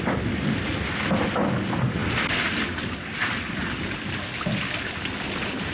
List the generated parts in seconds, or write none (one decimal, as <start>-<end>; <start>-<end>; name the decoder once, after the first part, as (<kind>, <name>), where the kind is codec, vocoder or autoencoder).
none